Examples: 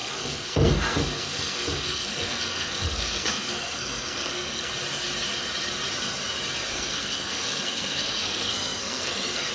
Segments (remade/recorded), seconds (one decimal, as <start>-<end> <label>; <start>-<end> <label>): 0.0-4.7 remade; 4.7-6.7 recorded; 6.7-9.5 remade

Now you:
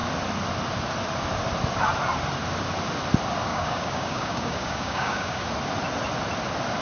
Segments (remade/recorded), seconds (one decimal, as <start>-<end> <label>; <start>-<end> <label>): 0.0-3.5 recorded; 3.5-5.4 remade; 5.4-6.8 recorded

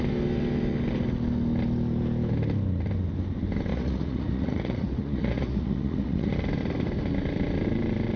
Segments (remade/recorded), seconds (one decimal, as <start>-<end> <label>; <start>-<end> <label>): 0.0-3.7 recorded; 3.7-6.3 remade; 6.3-8.2 recorded

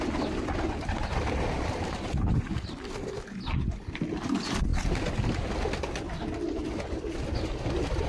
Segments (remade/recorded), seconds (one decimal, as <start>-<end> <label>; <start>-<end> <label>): 0.0-8.1 recorded

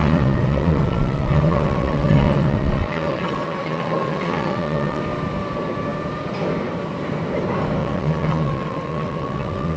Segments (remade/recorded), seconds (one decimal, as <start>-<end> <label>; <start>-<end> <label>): 0.0-5.0 remade; 5.0-7.8 recorded; 7.8-9.8 remade